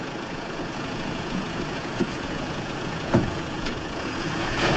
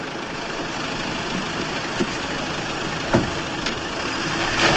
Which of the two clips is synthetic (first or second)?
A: first